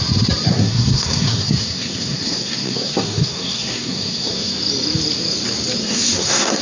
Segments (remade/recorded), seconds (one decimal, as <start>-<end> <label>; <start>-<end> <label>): 0.0-0.5 recorded; 0.5-4.5 remade; 4.5-5.8 recorded; 5.8-6.6 remade

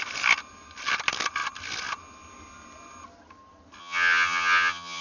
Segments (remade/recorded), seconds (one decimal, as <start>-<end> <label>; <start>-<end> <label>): 0.0-3.8 recorded; 3.8-5.0 remade

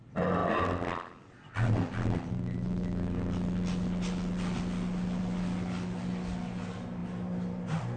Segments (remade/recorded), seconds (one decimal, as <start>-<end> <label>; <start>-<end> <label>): 0.0-7.0 recorded; 7.0-8.0 remade

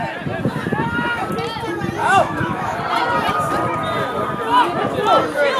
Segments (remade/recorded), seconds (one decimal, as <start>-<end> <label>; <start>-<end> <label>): 0.0-2.0 recorded; 2.0-2.8 remade; 2.8-5.6 recorded

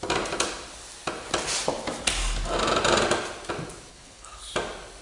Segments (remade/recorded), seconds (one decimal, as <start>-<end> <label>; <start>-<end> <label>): 0.0-3.9 recorded; 3.9-4.5 remade; 4.5-5.0 recorded

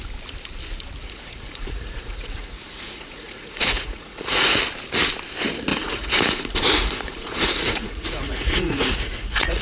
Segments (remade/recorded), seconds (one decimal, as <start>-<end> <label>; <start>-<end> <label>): 0.0-1.0 recorded; 1.0-4.6 remade; 4.6-5.7 recorded; 5.7-9.6 remade

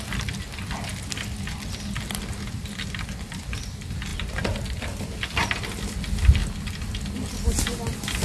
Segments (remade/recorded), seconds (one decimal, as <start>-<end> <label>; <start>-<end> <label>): 0.0-8.2 recorded